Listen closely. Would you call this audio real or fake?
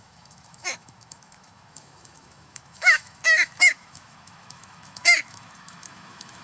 fake